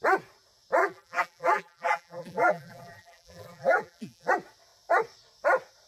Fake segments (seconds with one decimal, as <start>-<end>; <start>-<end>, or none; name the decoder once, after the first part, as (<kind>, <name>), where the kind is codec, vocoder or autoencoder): 0.8-4.3 (vocoder, BigVGAN v2)